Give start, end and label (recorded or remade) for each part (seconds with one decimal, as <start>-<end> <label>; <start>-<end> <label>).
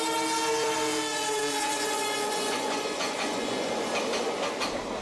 0.0-1.1 recorded; 1.1-3.7 remade; 3.7-5.0 recorded